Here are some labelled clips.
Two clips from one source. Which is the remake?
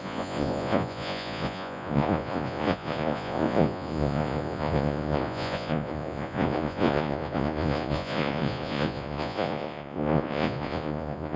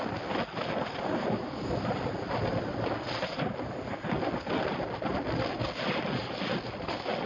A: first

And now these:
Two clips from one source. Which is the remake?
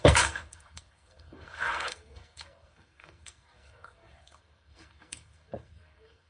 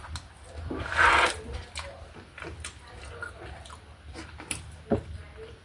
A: first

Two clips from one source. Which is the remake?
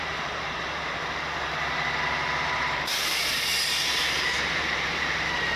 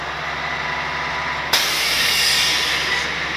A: first